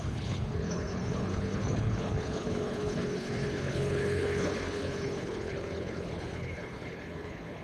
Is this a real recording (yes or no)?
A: no